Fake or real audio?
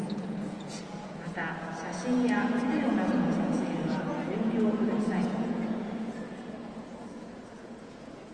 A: fake